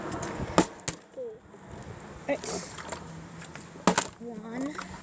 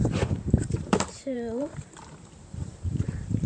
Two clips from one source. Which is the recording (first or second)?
first